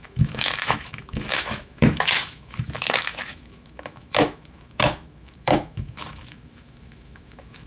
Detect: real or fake fake